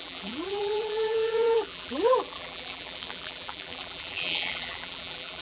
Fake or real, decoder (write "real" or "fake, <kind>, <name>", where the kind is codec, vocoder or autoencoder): fake, vocoder, BigVGAN v2